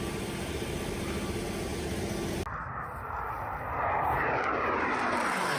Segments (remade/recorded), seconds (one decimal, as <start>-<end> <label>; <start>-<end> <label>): 0.0-5.6 recorded